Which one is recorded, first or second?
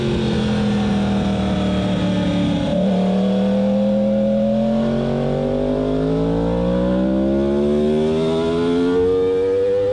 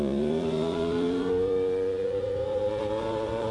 first